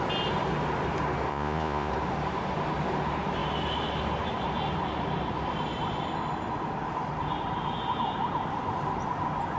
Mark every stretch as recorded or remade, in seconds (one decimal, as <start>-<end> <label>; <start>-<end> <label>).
0.0-1.3 recorded; 1.3-1.9 remade; 1.9-9.6 recorded